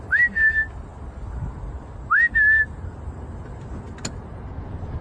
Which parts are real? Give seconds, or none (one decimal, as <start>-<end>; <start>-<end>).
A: 0.0-5.0